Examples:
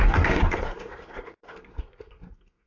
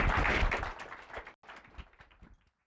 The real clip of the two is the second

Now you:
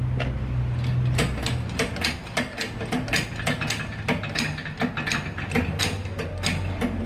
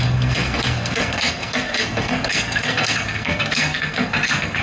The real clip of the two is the first